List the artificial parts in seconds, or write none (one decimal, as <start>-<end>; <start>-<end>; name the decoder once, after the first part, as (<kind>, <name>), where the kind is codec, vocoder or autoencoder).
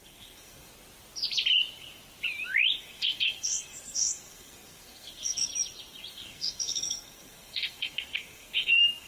0.0-0.7 (codec, SNAC); 2.8-5.5; 6.1-9.1